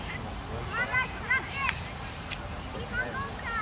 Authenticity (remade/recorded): remade